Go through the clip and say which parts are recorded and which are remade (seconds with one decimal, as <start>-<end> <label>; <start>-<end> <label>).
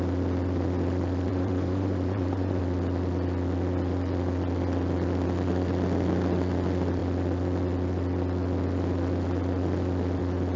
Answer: 0.0-1.3 recorded; 1.3-2.6 remade; 2.6-10.6 recorded